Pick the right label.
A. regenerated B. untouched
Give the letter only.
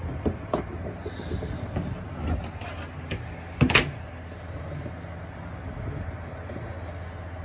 B